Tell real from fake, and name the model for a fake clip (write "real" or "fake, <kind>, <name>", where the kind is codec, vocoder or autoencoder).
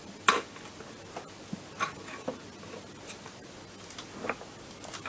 real